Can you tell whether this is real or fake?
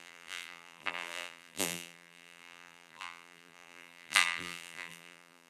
fake